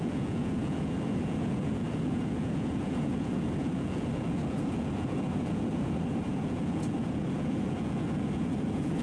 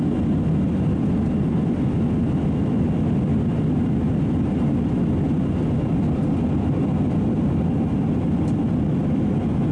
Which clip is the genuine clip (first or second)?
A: second